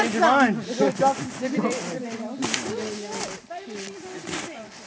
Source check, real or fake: real